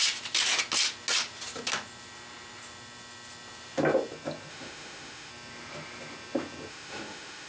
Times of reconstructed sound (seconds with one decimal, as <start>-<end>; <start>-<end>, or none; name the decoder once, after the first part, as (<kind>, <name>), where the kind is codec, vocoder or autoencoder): 4.5-5.3 (autoencoder, DAC-VAE); 6.7-7.5